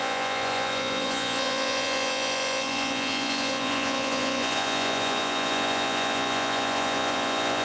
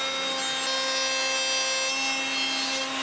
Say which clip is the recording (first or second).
second